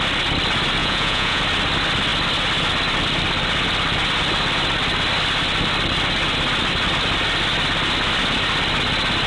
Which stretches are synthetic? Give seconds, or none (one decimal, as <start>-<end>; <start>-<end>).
0.8-1.4